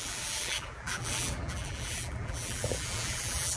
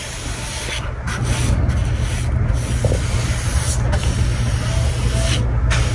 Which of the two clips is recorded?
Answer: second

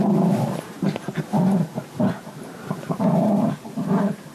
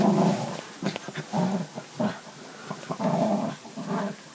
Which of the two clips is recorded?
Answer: second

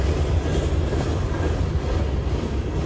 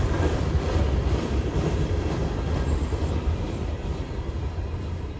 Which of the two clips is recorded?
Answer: first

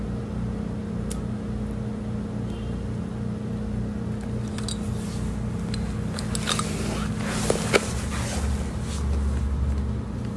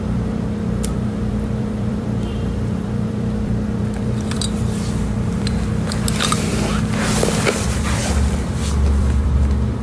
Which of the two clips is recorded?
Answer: first